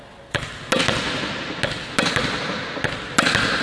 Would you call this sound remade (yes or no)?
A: no